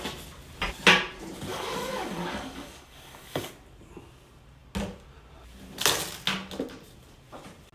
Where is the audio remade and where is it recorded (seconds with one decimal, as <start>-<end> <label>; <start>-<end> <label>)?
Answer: 0.0-1.5 recorded; 1.5-3.5 remade; 3.5-7.7 recorded